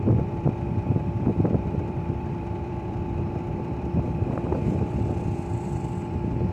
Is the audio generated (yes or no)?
yes